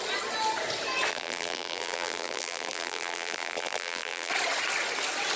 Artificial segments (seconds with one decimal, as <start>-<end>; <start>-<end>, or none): 1.1-4.3